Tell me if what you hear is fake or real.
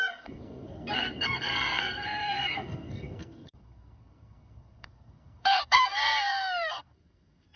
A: fake